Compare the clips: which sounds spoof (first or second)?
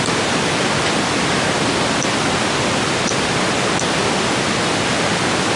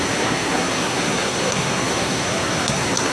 second